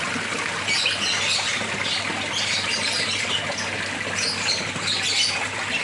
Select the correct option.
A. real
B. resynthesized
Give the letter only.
A